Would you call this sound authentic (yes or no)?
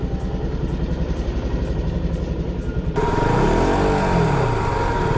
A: yes